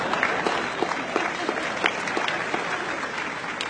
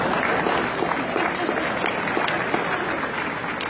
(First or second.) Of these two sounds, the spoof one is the first